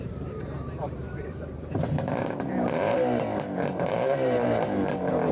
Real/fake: fake